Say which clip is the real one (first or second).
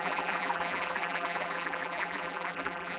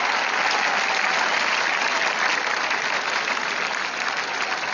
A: second